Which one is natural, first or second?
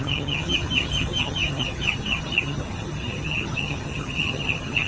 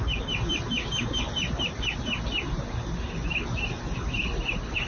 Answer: second